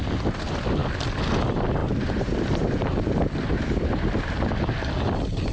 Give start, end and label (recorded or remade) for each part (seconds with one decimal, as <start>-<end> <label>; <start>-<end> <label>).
0.0-1.8 recorded; 1.8-4.5 remade; 4.5-5.5 recorded